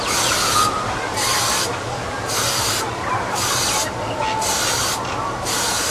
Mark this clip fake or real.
real